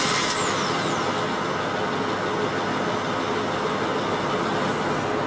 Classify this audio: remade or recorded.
recorded